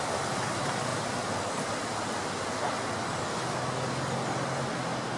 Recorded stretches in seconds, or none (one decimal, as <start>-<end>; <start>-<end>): 0.0-5.2